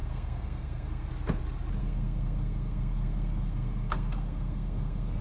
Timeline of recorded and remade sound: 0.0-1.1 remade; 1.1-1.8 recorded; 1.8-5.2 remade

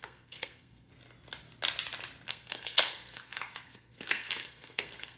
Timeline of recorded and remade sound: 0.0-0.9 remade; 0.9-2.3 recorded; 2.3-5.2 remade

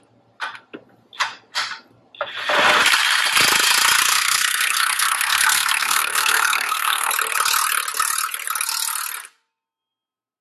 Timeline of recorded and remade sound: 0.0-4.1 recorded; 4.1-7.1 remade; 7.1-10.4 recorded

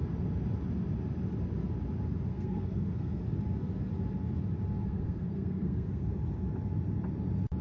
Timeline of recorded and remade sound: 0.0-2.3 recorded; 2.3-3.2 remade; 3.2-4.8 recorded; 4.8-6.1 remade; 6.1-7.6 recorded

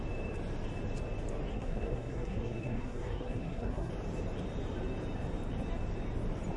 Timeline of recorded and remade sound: 0.0-1.5 recorded; 1.5-3.9 remade; 3.9-6.6 recorded